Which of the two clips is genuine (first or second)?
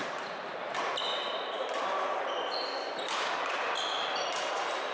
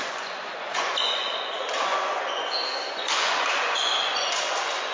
first